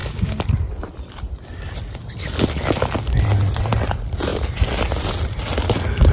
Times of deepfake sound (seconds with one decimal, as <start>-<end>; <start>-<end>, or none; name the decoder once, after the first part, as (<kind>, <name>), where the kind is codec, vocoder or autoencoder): none